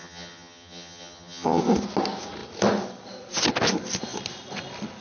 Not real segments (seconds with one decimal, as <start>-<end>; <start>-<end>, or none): 0.0-1.6